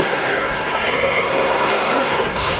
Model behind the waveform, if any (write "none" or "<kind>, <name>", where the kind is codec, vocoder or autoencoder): codec, SNAC